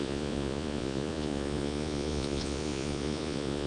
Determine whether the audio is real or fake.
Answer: fake